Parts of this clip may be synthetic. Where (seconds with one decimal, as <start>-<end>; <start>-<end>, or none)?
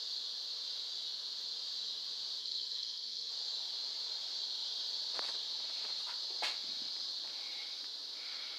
2.4-3.3